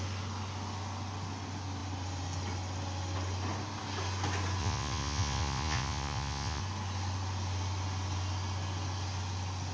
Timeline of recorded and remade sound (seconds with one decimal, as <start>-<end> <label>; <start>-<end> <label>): 0.0-4.6 recorded; 4.6-6.6 remade; 6.6-9.7 recorded